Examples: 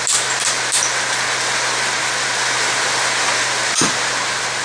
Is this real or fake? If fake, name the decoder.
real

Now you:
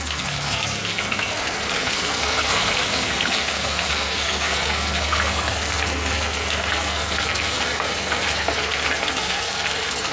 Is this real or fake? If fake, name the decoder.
fake, codec, SNAC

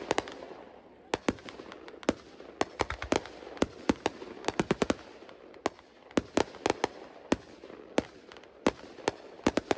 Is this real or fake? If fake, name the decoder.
real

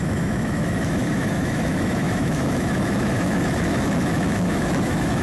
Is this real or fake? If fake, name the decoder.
fake, autoencoder, DAC-VAE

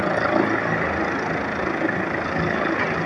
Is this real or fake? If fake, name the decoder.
real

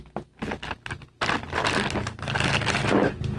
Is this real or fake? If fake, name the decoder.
real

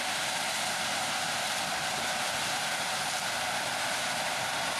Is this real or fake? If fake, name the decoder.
real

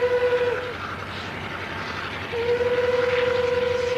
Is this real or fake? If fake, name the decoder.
real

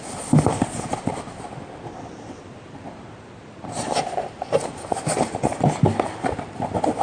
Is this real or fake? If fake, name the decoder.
real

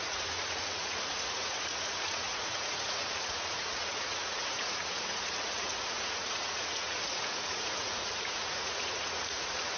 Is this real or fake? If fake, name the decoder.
fake, vocoder, Vocos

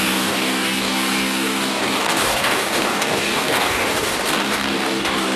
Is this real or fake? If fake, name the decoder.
fake, codec, DAC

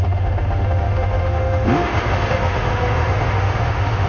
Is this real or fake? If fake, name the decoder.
fake, autoencoder, DAC-VAE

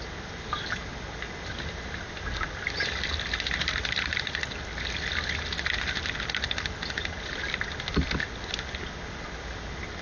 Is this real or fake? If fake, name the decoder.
real